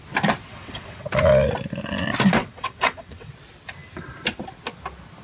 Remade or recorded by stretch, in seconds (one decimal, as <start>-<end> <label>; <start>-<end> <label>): 0.0-0.5 recorded; 0.5-1.1 remade; 1.1-2.4 recorded; 2.4-3.3 remade; 3.3-5.2 recorded